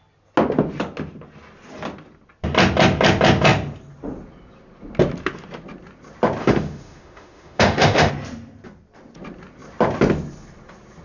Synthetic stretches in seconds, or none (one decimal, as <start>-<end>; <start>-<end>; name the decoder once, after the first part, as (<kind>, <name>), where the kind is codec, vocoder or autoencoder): 6.4-8.1 (autoencoder, DAC-VAE)